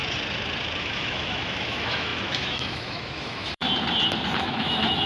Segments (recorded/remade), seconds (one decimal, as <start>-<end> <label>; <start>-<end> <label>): 0.0-0.8 recorded; 0.8-3.6 remade; 3.6-4.4 recorded; 4.4-5.1 remade